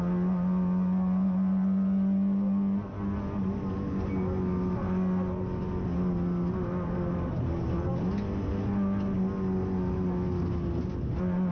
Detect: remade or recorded recorded